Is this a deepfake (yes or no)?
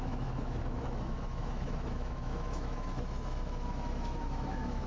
yes